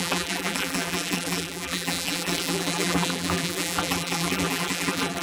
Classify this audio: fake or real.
fake